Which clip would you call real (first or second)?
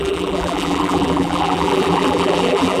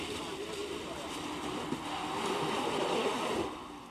second